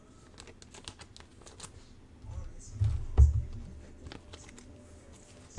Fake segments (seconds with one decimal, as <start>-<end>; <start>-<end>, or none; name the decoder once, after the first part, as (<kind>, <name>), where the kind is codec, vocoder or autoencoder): none